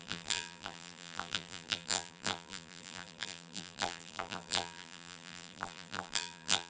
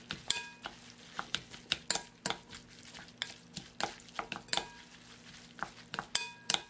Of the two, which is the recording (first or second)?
second